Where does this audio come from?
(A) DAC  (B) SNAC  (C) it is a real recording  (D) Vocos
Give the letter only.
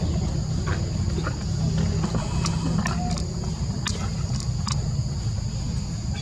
C